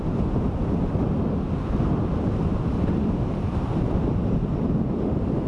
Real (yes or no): yes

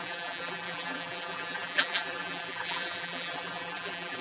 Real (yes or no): no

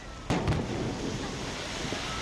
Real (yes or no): yes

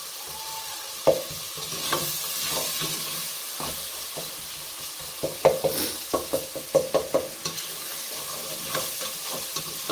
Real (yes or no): yes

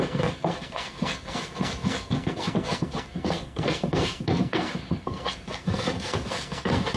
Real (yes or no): no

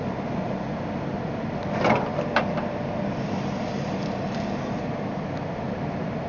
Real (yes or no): yes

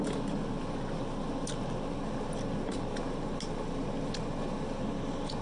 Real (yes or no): yes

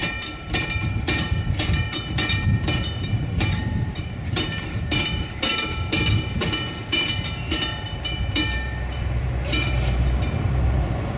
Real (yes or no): no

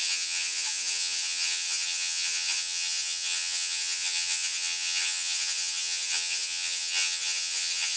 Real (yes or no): no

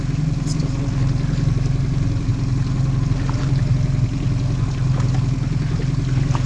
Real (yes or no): yes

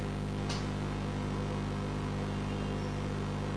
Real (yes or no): yes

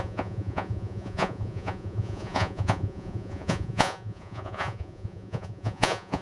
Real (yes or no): no